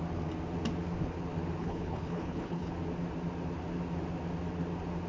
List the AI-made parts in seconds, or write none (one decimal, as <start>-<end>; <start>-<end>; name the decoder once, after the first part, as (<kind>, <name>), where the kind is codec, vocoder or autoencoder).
1.6-2.7 (codec, HILCodec)